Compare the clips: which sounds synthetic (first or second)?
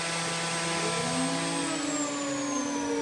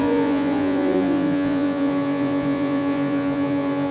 second